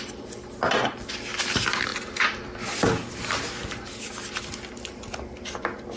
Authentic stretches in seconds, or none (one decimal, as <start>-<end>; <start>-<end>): 0.0-6.0